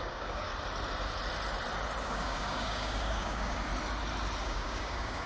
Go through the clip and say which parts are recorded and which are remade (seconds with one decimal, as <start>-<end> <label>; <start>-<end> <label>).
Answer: 0.0-0.5 remade; 0.5-2.0 recorded; 2.0-3.7 remade; 3.7-4.4 recorded; 4.4-5.3 remade